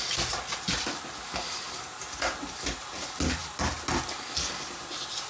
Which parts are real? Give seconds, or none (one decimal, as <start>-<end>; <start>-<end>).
0.0-5.3